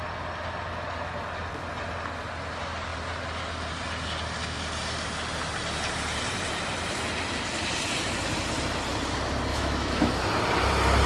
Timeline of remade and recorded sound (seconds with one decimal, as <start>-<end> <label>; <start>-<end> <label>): 0.0-9.5 recorded; 9.5-10.1 remade; 10.1-11.1 recorded